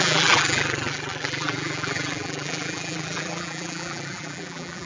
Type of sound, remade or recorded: remade